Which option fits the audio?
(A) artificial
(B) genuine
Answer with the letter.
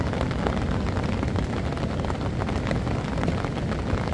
B